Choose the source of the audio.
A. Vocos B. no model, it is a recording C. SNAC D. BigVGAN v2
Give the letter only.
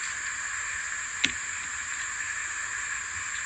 B